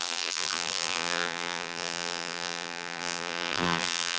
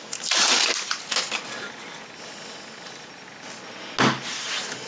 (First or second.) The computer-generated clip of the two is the first